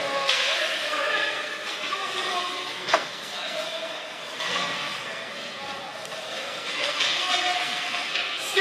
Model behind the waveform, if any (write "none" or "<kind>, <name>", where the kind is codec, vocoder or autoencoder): codec, SNAC